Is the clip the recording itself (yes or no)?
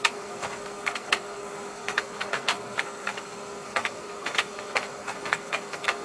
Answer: no